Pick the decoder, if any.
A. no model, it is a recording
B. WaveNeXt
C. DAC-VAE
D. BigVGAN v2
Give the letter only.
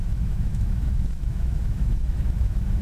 C